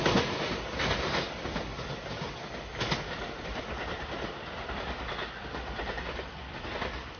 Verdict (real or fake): real